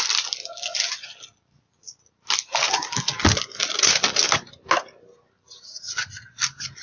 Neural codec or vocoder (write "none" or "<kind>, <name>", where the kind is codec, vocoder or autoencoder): none